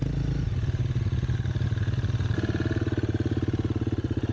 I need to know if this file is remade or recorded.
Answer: recorded